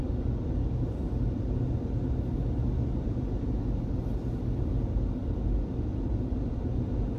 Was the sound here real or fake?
real